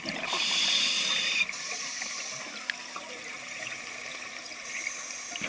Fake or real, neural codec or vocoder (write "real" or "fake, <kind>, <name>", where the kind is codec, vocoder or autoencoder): real